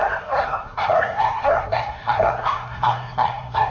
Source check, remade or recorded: remade